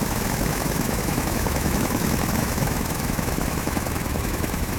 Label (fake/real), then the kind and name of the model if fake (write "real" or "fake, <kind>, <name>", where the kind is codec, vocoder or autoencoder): fake, autoencoder, DAC-VAE